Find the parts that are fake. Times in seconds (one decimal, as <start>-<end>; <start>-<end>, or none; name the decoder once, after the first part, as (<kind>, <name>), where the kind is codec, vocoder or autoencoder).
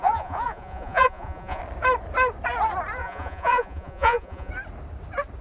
0.0-1.6 (vocoder, Vocos); 3.0-4.5